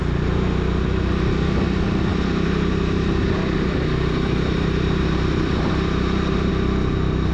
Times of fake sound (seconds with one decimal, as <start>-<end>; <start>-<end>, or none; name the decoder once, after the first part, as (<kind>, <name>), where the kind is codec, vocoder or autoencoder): 2.1-6.5 (vocoder, BigVGAN v2)

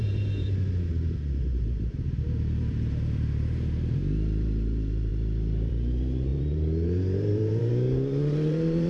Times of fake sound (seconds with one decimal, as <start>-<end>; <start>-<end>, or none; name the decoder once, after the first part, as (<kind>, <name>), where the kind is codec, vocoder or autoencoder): 0.0-5.1 (vocoder, BigVGAN v2); 5.7-8.9

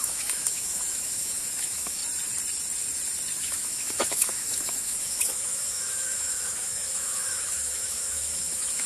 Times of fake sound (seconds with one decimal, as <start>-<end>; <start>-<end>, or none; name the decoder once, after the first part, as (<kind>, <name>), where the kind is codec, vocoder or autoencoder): 0.0-2.0 (autoencoder, DAC-VAE); 3.4-8.9

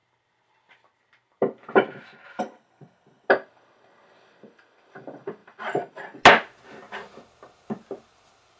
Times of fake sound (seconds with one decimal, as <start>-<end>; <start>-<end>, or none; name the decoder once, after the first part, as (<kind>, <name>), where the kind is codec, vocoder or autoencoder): none

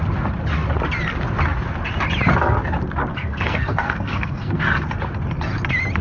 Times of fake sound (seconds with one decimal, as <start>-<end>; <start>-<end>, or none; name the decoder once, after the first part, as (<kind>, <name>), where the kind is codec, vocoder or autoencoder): 3.1-4.6 (codec, SNAC)

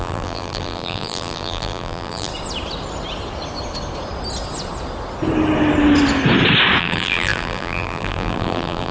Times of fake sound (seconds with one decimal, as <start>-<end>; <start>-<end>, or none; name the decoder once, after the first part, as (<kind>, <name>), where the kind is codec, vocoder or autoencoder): 0.0-2.3 (vocoder, BigVGAN v2); 6.8-8.9